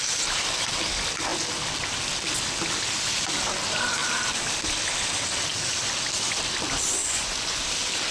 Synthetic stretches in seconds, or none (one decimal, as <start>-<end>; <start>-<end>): 7.0-7.6